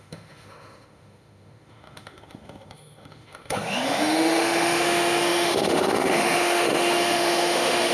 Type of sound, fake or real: fake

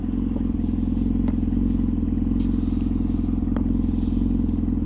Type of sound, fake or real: real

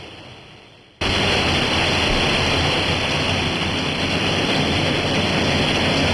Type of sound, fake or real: real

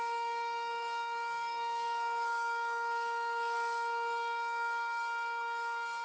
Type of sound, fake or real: fake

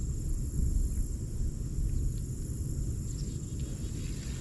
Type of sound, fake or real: real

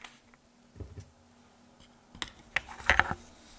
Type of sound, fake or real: real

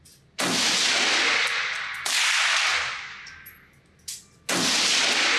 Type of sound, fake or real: real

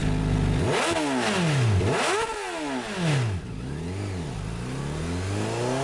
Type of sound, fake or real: real